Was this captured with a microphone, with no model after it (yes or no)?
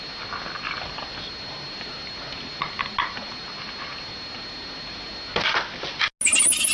yes